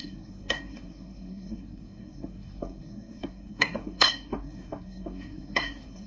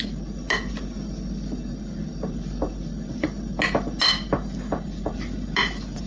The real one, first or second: second